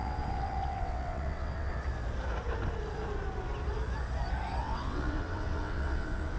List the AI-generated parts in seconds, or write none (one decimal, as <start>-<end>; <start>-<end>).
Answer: 0.0-1.7; 4.6-6.4